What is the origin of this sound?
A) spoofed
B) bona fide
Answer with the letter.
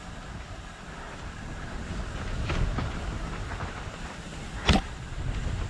B